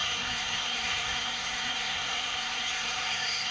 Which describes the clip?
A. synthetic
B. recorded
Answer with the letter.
A